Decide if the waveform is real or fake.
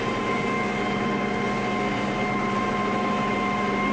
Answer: real